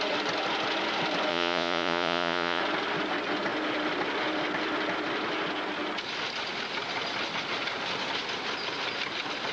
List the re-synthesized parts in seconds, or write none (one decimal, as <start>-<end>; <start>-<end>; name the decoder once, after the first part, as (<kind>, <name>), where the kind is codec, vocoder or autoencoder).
1.3-2.6 (vocoder, Vocos)